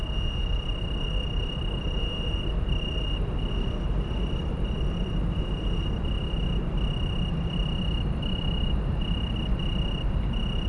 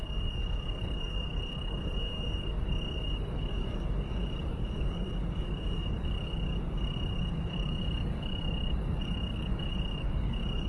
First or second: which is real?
first